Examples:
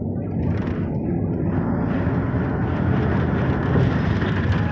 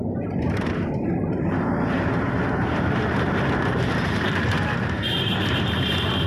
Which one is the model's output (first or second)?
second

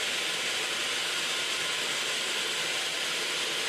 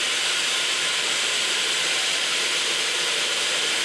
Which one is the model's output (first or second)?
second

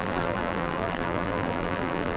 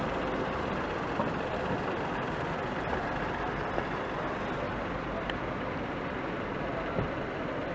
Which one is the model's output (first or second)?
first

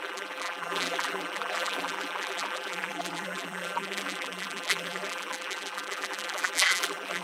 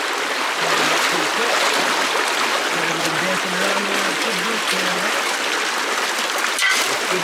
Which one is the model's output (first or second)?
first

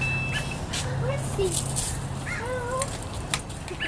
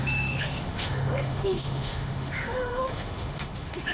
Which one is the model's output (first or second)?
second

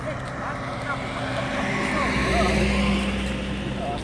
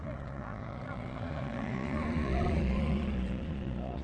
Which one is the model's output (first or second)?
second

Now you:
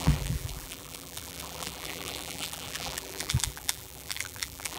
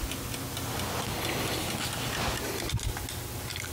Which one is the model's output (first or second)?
first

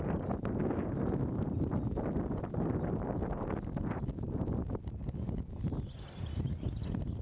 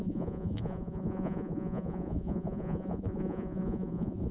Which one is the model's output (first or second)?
second